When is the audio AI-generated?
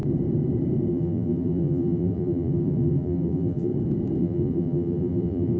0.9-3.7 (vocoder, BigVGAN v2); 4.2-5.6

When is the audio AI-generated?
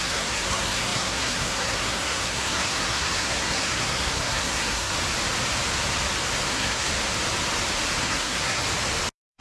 0.0-4.9 (codec, SNAC); 6.5-6.9; 8.0-8.6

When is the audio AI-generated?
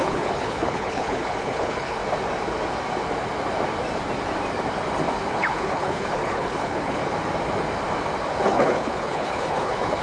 0.0-2.0 (codec, HILCodec); 5.3-7.0; 8.4-10.0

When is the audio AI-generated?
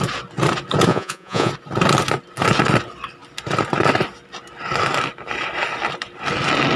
0.9-1.5 (vocoder, Vocos)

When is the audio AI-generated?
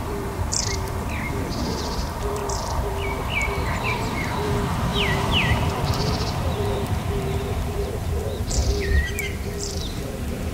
0.0-2.4 (vocoder, BigVGAN v2); 2.9-10.5